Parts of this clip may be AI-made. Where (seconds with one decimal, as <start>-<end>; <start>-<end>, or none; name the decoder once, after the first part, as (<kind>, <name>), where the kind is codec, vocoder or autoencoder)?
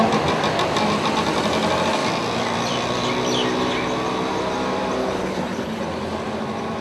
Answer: 5.0-5.8 (codec, HILCodec)